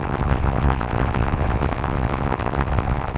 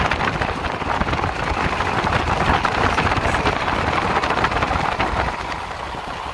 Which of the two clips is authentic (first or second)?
second